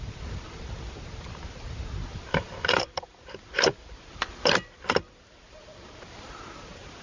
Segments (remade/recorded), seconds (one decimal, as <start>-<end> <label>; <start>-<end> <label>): 0.0-2.1 recorded; 2.1-6.1 remade; 6.1-7.0 recorded